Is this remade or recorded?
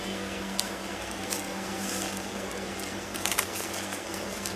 remade